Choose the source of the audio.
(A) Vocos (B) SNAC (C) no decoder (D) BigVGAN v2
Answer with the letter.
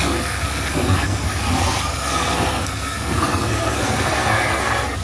B